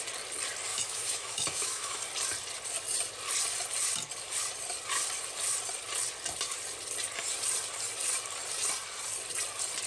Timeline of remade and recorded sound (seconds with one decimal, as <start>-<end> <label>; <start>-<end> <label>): 0.0-0.7 recorded; 0.7-2.0 remade; 2.0-9.9 recorded